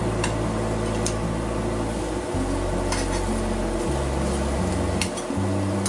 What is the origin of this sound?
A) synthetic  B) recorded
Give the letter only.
B